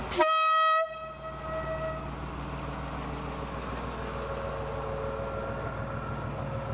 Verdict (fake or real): real